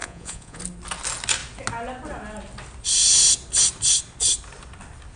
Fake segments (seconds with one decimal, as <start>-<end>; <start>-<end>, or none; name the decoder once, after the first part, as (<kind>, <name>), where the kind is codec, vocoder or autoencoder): 0.0-0.6 (vocoder, Vocos)